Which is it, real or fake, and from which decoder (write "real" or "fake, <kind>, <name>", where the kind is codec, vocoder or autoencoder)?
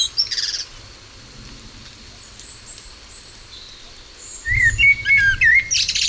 real